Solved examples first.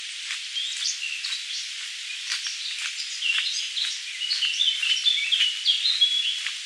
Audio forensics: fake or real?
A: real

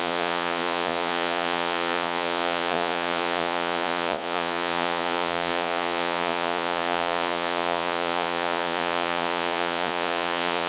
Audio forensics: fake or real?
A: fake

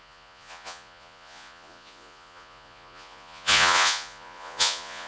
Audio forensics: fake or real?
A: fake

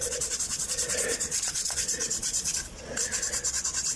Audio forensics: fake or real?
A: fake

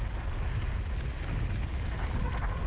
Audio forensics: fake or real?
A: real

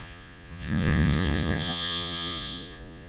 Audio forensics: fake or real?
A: fake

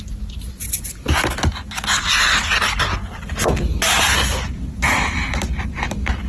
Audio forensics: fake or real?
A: real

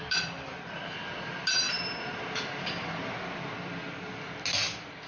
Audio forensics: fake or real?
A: real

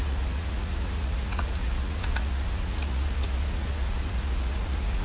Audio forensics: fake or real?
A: fake